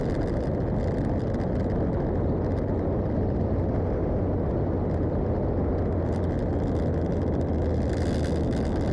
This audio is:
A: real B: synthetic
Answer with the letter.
A